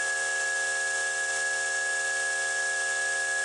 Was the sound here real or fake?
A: real